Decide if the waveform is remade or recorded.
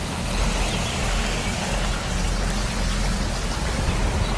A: recorded